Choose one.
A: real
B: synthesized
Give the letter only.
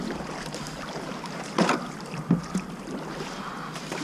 A